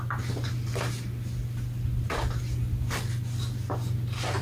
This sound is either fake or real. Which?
real